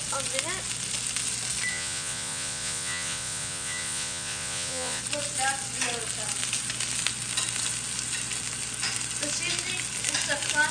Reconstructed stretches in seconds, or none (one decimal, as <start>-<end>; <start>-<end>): 1.7-5.0